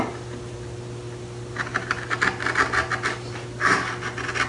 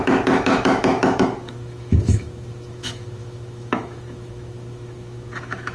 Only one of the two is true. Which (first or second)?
first